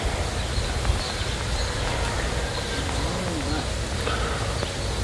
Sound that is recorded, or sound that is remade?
recorded